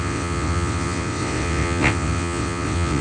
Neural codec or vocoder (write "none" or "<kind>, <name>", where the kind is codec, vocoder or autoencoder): vocoder, WaveNeXt